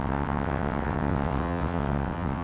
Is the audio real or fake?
fake